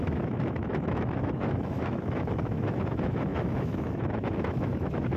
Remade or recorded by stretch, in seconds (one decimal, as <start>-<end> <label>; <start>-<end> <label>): 0.0-5.2 remade